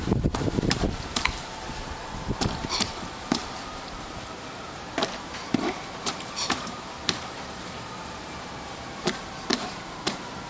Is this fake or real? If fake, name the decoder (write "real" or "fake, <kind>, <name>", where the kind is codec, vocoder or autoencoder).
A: fake, vocoder, BigVGAN v2